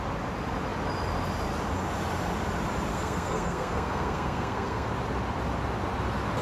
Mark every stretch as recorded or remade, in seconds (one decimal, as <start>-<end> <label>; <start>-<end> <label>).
0.0-2.9 recorded; 2.9-4.9 remade; 4.9-6.4 recorded